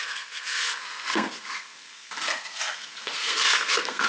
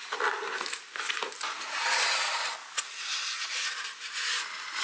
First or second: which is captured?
second